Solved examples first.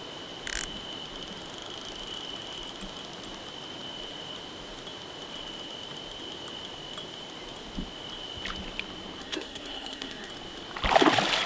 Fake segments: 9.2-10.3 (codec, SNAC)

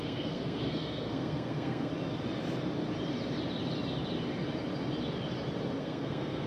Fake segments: 0.0-1.9 (codec, SNAC); 5.8-6.5